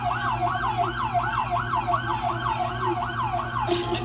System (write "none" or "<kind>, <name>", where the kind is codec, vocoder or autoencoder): none